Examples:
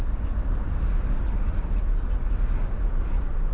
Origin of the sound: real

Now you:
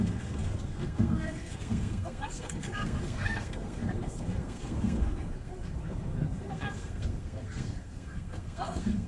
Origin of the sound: fake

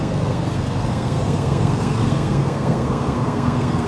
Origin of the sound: fake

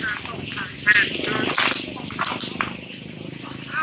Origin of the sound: real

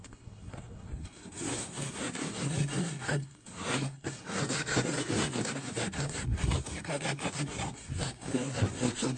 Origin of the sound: fake